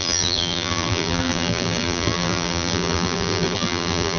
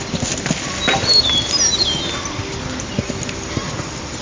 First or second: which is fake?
first